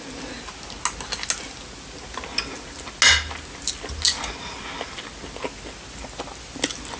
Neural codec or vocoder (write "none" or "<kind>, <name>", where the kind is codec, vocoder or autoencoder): none